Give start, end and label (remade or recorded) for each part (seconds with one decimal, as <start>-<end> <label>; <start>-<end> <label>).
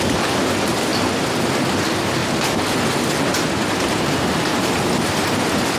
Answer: 0.0-5.8 recorded